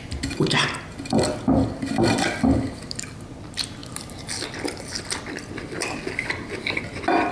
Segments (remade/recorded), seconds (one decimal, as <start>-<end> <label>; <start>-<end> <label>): 0.0-7.3 recorded

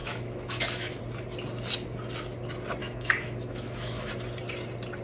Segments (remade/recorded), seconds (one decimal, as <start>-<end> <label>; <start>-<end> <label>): 0.0-1.0 remade; 1.0-2.8 recorded; 2.8-4.1 remade; 4.1-5.0 recorded

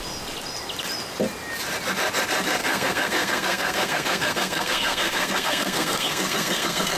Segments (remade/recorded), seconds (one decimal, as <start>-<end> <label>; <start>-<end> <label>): 0.0-2.6 recorded; 2.6-7.0 remade

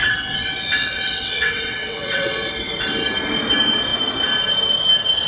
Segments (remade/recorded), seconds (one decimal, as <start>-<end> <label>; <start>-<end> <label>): 0.0-2.5 remade; 2.5-5.3 recorded

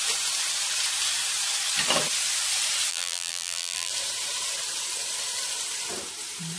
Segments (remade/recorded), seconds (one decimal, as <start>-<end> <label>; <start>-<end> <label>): 0.0-2.9 recorded; 2.9-3.9 remade; 3.9-6.6 recorded

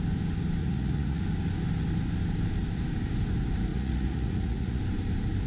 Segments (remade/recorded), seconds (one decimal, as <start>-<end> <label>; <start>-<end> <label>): 0.0-0.6 recorded; 0.6-1.2 remade; 1.2-3.7 recorded; 3.7-4.8 remade; 4.8-5.5 recorded

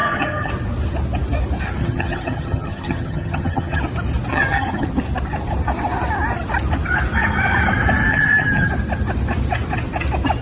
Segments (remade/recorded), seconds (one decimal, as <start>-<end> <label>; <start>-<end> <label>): 0.0-0.5 remade; 0.5-1.8 recorded; 1.8-3.8 remade; 3.8-4.3 recorded; 4.3-4.9 remade; 4.9-8.1 recorded; 8.1-8.7 remade; 8.7-10.4 recorded

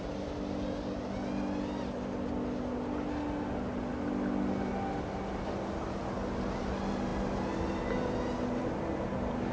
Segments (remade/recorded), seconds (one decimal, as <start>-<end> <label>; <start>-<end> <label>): 0.0-9.5 recorded